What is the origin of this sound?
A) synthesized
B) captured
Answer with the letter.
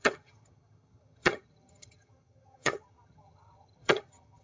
A